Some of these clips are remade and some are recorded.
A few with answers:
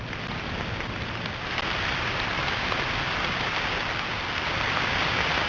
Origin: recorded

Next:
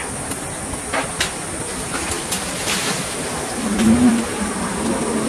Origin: remade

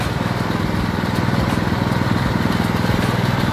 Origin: recorded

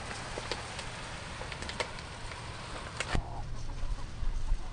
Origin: remade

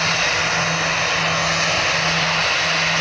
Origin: recorded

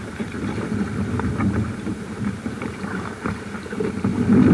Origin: remade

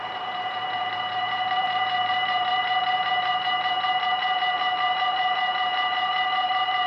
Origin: remade